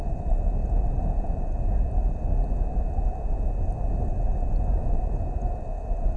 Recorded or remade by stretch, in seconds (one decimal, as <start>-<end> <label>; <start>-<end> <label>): 0.0-6.2 recorded